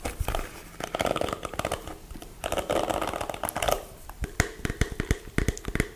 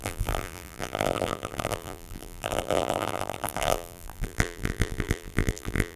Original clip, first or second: first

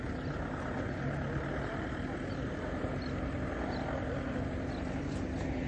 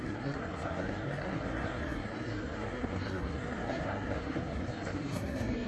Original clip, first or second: first